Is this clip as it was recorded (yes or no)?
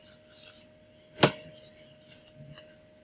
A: yes